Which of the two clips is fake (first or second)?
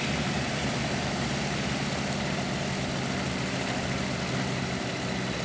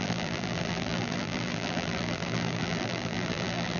second